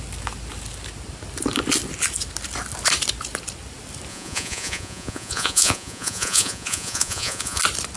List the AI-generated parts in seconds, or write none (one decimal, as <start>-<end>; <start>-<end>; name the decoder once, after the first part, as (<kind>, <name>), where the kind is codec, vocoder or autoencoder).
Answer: 4.1-7.6 (vocoder, Vocos)

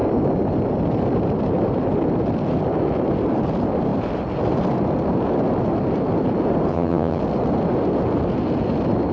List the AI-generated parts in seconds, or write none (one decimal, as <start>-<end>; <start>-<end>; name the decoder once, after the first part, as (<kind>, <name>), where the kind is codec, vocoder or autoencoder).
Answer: 6.7-7.2 (vocoder, HiFi-GAN)

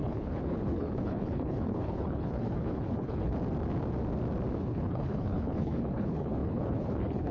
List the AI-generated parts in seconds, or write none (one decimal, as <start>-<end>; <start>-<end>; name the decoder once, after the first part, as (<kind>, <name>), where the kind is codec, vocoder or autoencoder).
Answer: 0.0-3.3 (codec, HILCodec); 4.5-7.3